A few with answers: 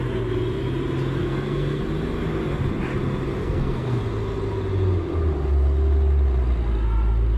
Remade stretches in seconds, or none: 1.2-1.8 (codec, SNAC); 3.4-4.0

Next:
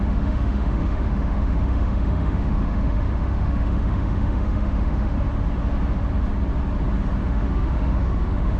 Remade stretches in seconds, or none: 0.0-5.1 (autoencoder, DAC-VAE); 7.2-8.6

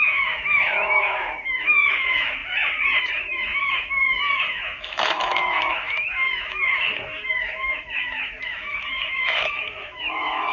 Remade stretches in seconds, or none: 0.0-2.4 (autoencoder, DAC-VAE); 3.0-10.5

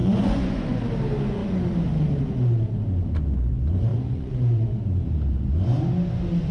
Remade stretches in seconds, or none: 0.0-0.8 (vocoder, Vocos); 3.9-4.8